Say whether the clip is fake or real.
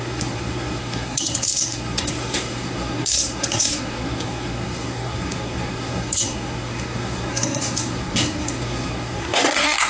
fake